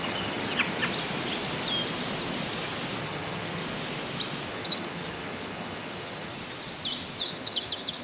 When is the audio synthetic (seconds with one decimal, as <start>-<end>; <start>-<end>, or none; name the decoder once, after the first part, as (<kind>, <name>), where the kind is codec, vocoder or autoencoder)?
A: 0.0-0.8 (vocoder, HiFi-GAN); 3.0-3.6; 4.5-6.3; 7.2-8.0

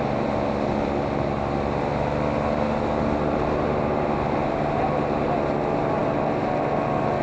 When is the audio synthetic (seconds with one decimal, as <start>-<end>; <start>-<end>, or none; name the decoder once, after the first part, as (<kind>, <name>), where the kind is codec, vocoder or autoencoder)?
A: none